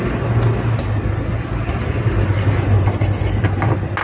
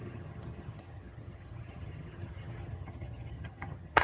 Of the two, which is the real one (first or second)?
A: first